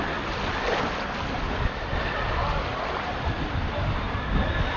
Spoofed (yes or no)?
no